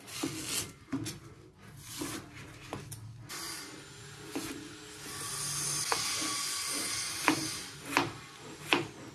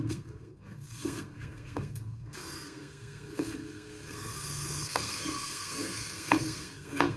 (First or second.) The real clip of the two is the first